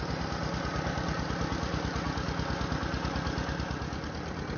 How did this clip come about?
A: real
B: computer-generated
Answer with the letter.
A